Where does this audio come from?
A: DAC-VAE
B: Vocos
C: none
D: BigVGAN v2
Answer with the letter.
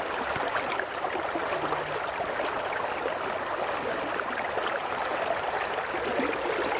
C